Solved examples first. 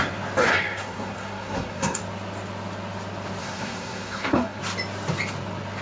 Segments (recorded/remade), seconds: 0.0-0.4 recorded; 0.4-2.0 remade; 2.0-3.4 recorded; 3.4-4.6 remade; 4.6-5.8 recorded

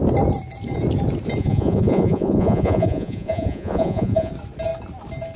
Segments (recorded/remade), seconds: 0.0-1.4 recorded; 1.4-4.3 remade; 4.3-5.4 recorded